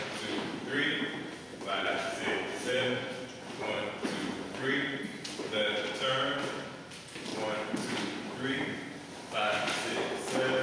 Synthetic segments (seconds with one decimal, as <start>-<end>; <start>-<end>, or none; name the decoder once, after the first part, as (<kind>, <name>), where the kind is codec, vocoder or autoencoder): 1.5-5.0 (vocoder, Vocos)